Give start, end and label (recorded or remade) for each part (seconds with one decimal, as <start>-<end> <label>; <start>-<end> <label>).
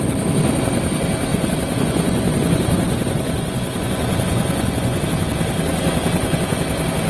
0.0-1.3 recorded; 1.3-5.0 remade; 5.0-5.7 recorded; 5.7-6.6 remade; 6.6-7.1 recorded